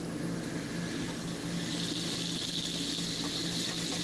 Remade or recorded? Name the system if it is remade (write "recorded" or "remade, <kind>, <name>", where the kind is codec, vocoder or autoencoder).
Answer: recorded